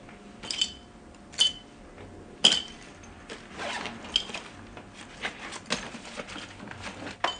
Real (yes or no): yes